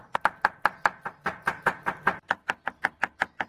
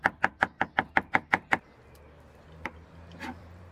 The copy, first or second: second